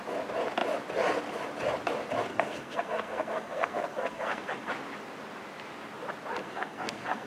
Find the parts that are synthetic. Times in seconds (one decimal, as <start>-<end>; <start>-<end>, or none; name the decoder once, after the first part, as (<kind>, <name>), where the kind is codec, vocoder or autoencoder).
2.3-4.7 (codec, SNAC); 6.4-7.3

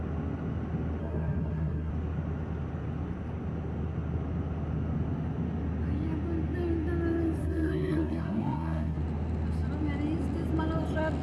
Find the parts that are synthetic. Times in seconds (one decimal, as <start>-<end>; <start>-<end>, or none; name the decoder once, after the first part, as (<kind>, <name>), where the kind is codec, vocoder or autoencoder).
1.0-1.9 (codec, SNAC); 7.4-9.0

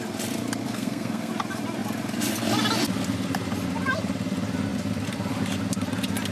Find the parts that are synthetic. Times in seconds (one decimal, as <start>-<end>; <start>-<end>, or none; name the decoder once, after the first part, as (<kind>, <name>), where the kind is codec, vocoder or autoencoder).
0.6-1.3 (codec, SNAC)

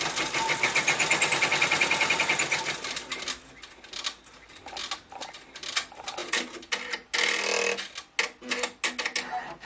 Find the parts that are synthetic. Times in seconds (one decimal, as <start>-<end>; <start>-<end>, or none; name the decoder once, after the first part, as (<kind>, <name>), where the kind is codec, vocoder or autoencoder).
none

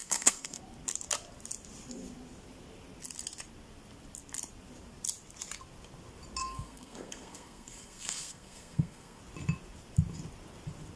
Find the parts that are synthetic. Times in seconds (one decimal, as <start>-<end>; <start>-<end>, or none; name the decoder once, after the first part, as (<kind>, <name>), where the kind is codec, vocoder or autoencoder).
0.0-0.6 (codec, SNAC); 6.4-9.2

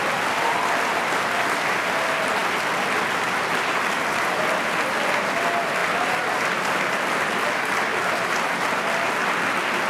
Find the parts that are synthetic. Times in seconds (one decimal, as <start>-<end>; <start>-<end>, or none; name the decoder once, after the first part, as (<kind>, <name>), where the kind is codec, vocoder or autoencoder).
none